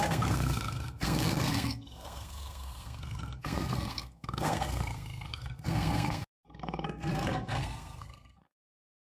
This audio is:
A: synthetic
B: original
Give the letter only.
A